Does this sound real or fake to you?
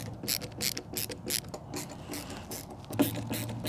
real